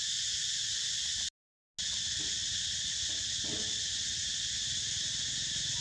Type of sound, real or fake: real